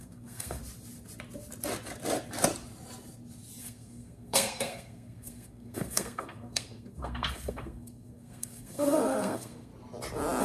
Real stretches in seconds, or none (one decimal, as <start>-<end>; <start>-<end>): 0.6-3.6; 9.7-10.4